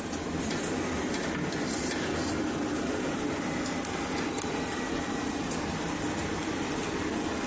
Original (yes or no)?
yes